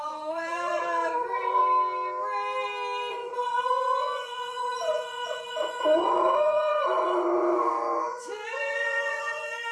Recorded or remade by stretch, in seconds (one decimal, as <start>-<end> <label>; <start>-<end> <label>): 0.0-1.6 remade; 1.6-3.1 recorded; 3.1-9.7 remade